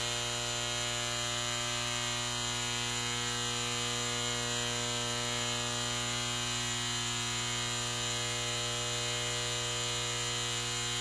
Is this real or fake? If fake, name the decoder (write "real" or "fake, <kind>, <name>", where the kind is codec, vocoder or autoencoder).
real